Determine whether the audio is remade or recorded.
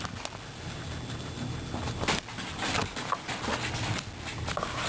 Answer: recorded